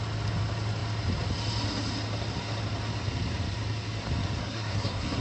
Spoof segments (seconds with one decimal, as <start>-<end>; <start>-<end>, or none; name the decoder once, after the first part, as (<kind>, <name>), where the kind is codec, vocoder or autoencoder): 4.4-5.2 (codec, SNAC)